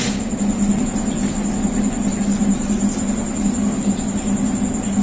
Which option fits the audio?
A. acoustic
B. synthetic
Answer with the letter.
A